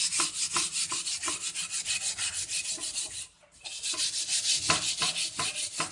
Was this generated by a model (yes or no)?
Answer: no